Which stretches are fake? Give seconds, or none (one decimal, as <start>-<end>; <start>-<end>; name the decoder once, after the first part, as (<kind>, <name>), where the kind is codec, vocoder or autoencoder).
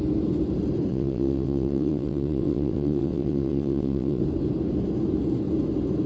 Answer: 0.9-4.2 (vocoder, WaveNeXt)